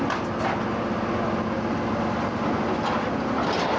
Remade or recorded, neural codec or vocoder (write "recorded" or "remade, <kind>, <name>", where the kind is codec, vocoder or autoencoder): recorded